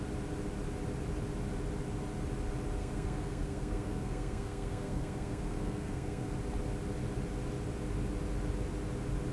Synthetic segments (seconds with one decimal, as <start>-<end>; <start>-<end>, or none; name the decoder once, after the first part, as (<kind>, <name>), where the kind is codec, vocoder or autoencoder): 2.8-6.3 (codec, SNAC)